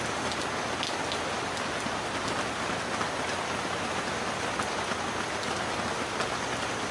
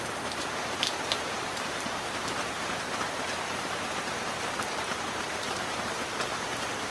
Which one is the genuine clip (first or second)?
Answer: first